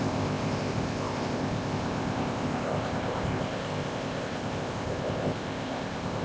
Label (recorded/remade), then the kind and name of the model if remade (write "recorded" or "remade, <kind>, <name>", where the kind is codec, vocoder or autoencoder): remade, codec, ZipCodec